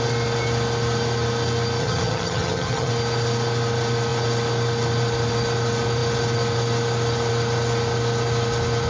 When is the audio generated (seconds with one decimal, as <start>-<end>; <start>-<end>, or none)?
1.8-2.9